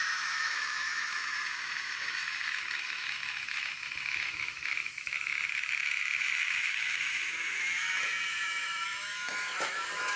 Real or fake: fake